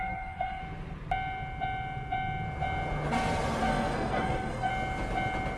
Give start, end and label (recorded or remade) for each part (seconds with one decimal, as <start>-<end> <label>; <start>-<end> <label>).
0.0-0.6 remade; 0.6-3.7 recorded; 3.7-4.7 remade; 4.7-5.6 recorded